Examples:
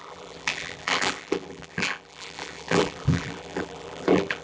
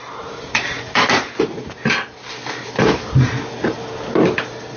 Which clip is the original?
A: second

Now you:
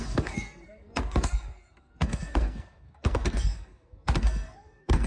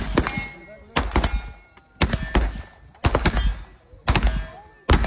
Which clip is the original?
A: second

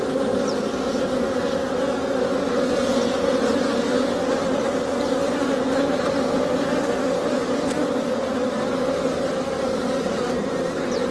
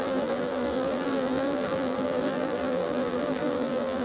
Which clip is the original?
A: first